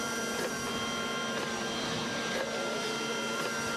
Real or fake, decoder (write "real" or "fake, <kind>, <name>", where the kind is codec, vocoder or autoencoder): real